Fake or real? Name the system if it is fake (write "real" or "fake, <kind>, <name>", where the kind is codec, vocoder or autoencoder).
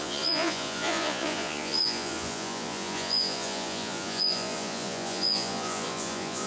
fake, vocoder, Vocos